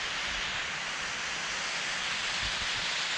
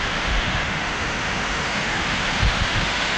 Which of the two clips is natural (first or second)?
first